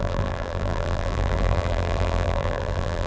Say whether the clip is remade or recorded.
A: remade